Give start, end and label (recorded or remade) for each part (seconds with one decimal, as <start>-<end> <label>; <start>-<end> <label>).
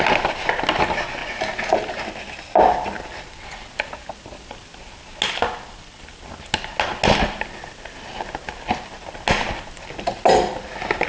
0.0-11.1 recorded